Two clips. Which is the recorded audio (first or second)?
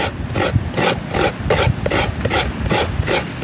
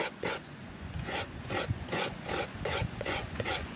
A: first